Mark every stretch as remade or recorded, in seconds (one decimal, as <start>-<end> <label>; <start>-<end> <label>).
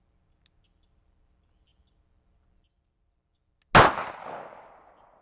0.0-5.2 recorded